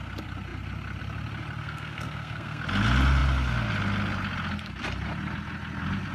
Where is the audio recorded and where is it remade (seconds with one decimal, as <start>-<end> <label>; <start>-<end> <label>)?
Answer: 0.0-1.6 recorded; 1.6-2.6 remade; 2.6-6.1 recorded